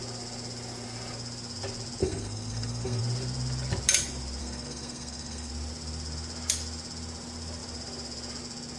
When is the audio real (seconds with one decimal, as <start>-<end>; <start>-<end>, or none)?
0.0-2.0; 3.0-4.4; 5.5-8.8